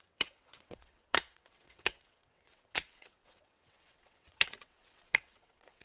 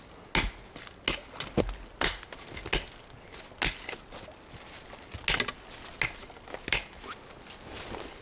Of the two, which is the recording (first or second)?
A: second